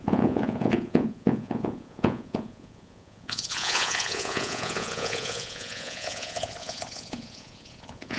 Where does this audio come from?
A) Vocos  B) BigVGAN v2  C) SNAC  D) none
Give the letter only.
A